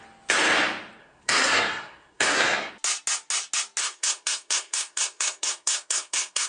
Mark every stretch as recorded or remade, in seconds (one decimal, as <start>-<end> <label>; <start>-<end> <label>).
0.0-1.0 recorded; 1.0-2.7 remade; 2.7-3.8 recorded; 3.8-6.5 remade